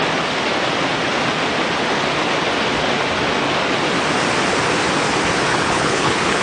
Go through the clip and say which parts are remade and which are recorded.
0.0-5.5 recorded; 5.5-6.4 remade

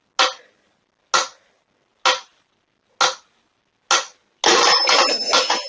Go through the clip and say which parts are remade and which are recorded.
0.0-5.7 recorded

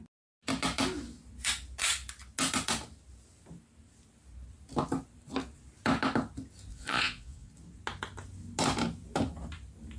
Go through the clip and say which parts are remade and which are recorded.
0.0-6.7 recorded; 6.7-7.5 remade; 7.5-10.0 recorded

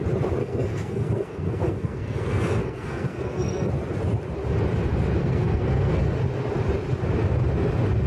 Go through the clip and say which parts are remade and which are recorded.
0.0-0.4 recorded; 0.4-3.7 remade; 3.7-5.2 recorded; 5.2-6.0 remade; 6.0-8.1 recorded

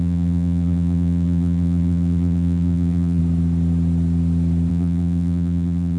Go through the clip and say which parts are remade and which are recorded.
0.0-3.2 remade; 3.2-4.7 recorded; 4.7-6.0 remade